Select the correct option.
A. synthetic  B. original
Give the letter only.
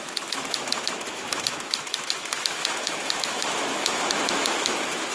A